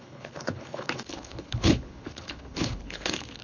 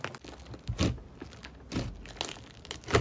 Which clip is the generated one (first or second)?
first